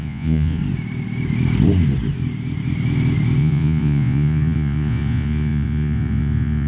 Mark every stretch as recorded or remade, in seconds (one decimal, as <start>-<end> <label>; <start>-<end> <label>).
0.0-0.6 remade; 0.6-3.4 recorded; 3.4-6.7 remade